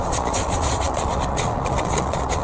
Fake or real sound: fake